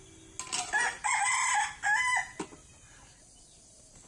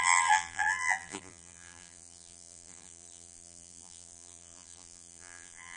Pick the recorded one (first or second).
first